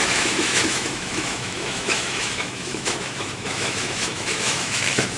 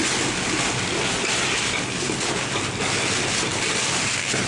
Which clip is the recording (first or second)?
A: second